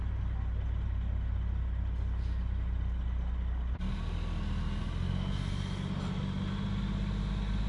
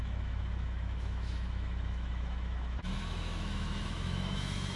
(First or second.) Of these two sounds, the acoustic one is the first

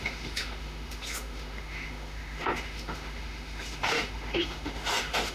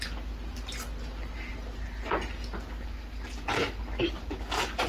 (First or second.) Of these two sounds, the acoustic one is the second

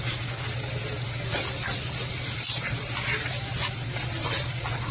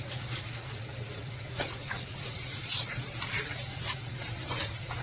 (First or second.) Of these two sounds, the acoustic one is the first